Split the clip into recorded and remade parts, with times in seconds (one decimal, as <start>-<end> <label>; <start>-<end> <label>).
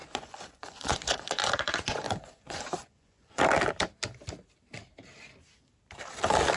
0.0-3.4 remade; 3.4-6.6 recorded